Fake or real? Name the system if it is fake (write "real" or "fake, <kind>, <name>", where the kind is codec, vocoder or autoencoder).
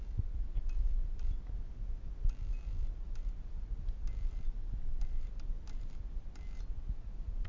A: real